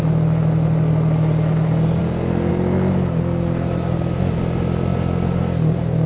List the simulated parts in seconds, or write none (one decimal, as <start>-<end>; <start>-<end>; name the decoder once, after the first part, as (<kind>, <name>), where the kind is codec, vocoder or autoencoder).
none